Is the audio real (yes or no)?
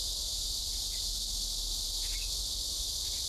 yes